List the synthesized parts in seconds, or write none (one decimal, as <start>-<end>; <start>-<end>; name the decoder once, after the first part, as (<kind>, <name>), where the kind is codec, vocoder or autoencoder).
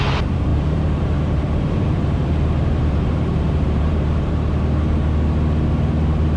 0.5-4.3 (vocoder, BigVGAN v2)